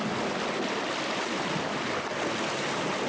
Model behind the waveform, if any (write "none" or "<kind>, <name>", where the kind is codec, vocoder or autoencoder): none